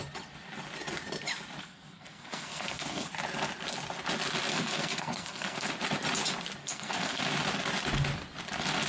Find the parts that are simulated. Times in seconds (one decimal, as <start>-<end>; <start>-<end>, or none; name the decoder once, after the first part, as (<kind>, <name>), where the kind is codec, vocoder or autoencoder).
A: 1.6-3.1 (codec, SNAC); 4.5-5.7; 6.6-7.2